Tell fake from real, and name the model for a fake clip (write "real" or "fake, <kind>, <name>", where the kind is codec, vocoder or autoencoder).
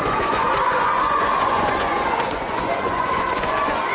fake, vocoder, Vocos